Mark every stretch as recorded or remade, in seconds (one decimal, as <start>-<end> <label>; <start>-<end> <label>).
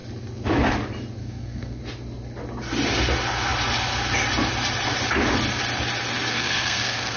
0.0-1.2 recorded; 1.2-1.8 remade; 1.8-6.3 recorded; 6.3-7.2 remade